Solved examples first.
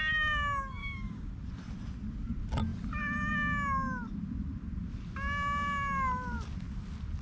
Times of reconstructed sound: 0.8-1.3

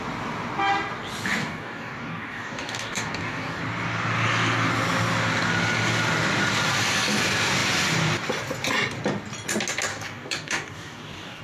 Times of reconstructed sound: 1.4-3.6; 9.9-11.4

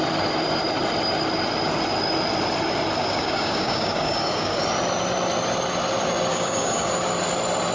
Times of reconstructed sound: 3.0-4.6; 6.3-6.9

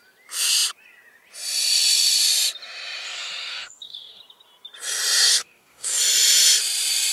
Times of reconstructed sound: 3.5-4.2; 5.3-6.0

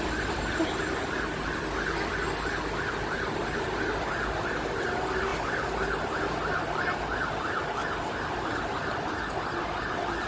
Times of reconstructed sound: none

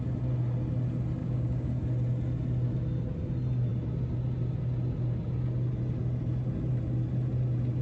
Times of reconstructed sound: 1.2-1.7

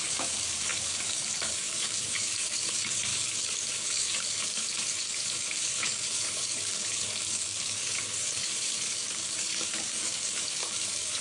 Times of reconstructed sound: 0.0-11.2